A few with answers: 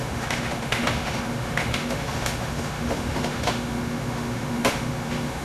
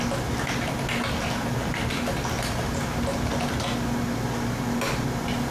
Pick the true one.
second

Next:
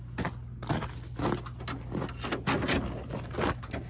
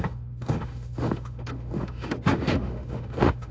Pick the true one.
first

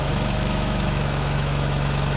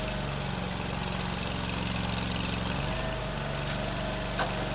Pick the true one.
second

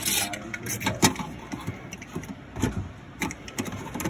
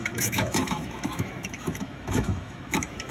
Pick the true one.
first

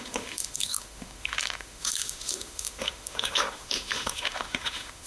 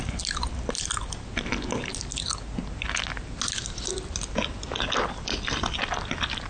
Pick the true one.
second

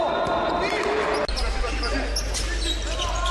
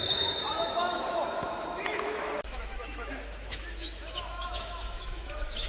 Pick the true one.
first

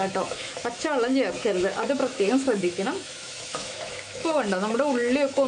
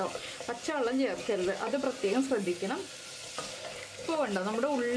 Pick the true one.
second